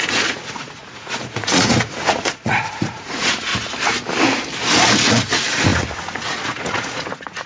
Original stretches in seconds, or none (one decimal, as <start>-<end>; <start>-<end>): 3.5-5.1